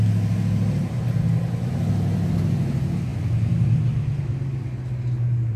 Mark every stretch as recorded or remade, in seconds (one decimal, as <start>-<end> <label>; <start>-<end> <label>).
0.0-5.6 recorded